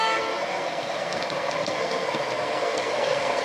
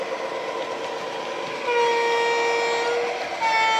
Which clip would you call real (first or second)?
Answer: second